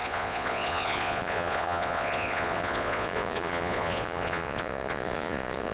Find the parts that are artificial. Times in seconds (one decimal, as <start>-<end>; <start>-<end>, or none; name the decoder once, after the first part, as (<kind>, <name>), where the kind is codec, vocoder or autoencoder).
0.0-5.7 (vocoder, Vocos)